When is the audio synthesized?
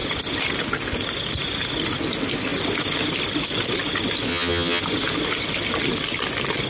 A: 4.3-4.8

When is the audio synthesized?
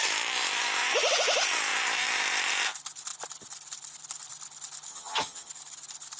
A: 4.9-5.5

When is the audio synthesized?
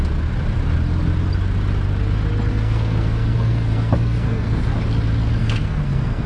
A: 2.5-4.6; 5.4-6.3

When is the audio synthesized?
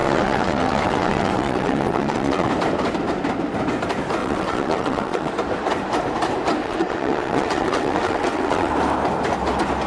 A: 0.0-2.5; 4.2-5.3; 6.6-8.7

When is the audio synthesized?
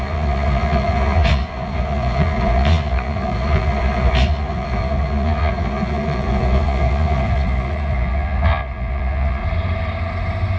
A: 0.0-9.4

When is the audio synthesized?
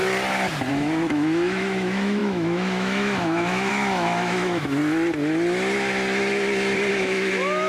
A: 0.7-4.8; 6.9-7.7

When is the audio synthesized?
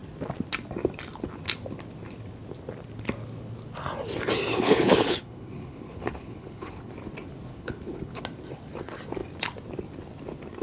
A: 4.5-6.9; 7.5-8.2